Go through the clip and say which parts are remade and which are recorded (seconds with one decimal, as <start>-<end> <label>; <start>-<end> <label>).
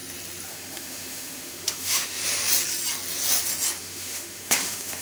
0.0-0.5 recorded; 0.5-2.2 remade; 2.2-3.8 recorded; 3.8-5.0 remade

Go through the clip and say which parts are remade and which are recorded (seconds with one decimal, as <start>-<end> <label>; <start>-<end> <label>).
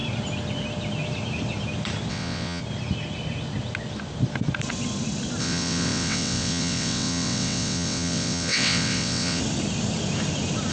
0.0-2.1 recorded; 2.1-2.6 remade; 2.6-5.4 recorded; 5.4-9.4 remade; 9.4-10.7 recorded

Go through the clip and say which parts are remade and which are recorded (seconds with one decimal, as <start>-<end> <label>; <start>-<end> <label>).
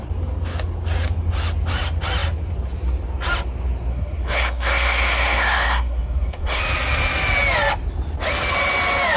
0.0-3.9 recorded; 3.9-6.6 remade; 6.6-9.2 recorded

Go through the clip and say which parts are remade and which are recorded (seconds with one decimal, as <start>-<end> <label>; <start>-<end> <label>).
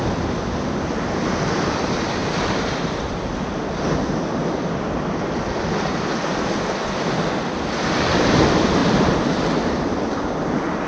0.0-8.8 recorded; 8.8-10.1 remade; 10.1-10.9 recorded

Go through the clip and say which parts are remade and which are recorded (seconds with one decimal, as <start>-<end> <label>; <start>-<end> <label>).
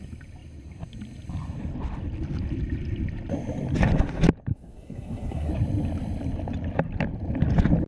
0.0-4.5 recorded; 4.5-5.5 remade; 5.5-7.9 recorded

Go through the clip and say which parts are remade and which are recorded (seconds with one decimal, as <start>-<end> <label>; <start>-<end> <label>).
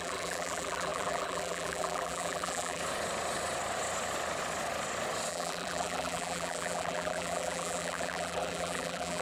0.0-2.8 remade; 2.8-5.3 recorded; 5.3-9.2 remade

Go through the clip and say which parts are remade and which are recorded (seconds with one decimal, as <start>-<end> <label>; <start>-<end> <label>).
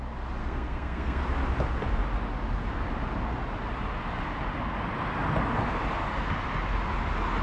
0.0-0.4 recorded; 0.4-1.2 remade; 1.2-7.4 recorded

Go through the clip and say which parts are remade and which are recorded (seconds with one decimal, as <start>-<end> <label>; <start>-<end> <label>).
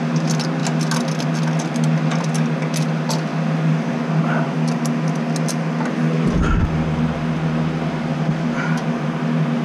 0.0-9.6 recorded